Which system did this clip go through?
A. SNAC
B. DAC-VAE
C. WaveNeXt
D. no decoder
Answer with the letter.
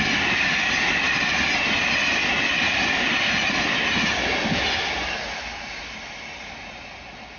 D